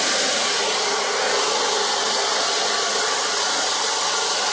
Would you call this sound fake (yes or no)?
no